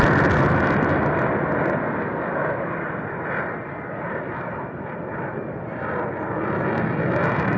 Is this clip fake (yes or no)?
no